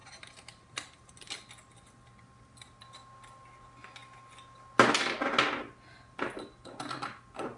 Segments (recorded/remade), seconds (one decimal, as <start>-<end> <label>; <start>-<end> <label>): 0.0-1.1 remade; 1.1-7.6 recorded